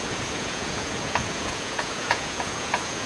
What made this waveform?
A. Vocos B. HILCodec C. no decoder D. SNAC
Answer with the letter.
A